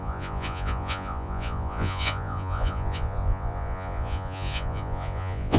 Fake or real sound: fake